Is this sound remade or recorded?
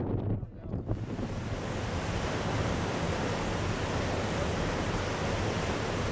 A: recorded